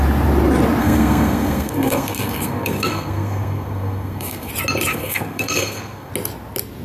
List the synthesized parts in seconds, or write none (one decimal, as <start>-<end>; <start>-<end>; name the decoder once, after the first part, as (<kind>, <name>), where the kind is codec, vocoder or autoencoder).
0.8-4.5 (codec, SNAC); 4.9-6.1

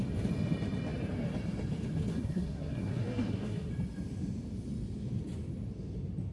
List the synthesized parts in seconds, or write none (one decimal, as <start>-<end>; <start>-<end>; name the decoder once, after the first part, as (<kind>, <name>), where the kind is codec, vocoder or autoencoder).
2.1-3.7 (codec, SNAC)

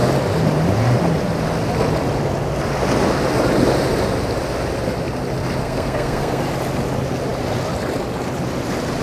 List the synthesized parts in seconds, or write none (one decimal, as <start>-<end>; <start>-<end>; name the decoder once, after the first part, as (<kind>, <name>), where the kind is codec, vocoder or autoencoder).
5.6-6.4 (codec, SNAC)